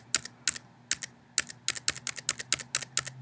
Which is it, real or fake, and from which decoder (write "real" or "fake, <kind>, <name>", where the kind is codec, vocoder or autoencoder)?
real